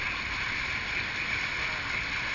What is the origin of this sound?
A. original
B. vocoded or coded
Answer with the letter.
A